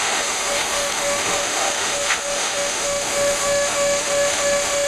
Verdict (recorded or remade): remade